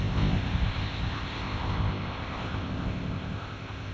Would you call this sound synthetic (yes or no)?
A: yes